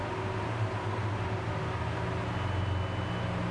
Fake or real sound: real